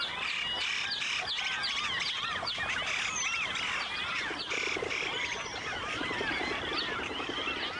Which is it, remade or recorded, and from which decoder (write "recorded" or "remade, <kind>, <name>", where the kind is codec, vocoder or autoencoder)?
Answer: recorded